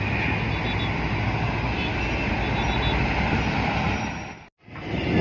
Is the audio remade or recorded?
recorded